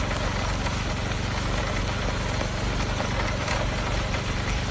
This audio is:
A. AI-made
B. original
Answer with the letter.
B